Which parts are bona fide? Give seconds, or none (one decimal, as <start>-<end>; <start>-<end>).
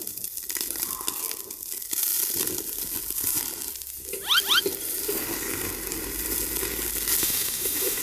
0.0-7.2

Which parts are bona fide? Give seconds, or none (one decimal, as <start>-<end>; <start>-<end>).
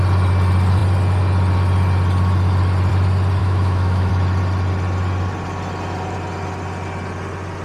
0.0-3.4; 4.1-7.6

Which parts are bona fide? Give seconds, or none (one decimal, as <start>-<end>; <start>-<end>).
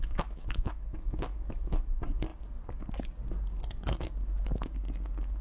1.9-5.4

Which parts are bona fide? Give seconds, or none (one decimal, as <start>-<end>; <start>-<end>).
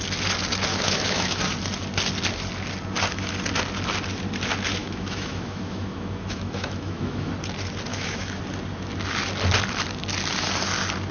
0.0-0.7; 1.4-4.8; 7.3-7.9; 8.4-11.1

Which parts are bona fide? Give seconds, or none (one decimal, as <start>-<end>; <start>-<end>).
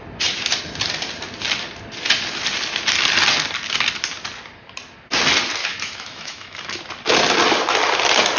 0.0-5.6; 6.8-8.4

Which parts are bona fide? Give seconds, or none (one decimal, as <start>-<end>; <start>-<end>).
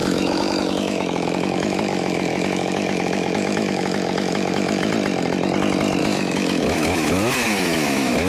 4.9-6.0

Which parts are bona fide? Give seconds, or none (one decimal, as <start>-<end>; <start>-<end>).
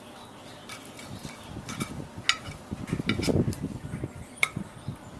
0.0-5.2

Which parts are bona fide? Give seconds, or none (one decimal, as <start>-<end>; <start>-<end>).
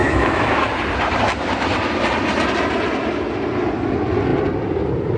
0.7-5.2